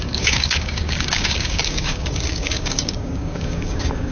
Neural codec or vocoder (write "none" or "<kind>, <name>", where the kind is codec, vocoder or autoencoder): codec, DAC